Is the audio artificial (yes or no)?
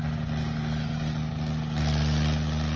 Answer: no